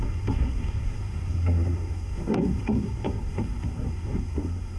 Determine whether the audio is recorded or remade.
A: remade